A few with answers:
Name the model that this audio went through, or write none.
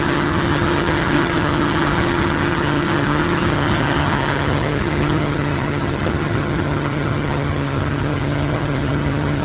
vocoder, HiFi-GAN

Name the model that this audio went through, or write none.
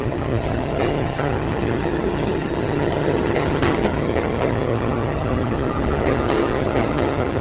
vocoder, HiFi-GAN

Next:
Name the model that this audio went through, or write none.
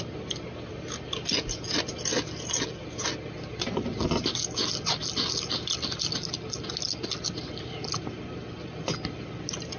none